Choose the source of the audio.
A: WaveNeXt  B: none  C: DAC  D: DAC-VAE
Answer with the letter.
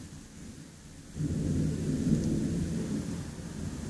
B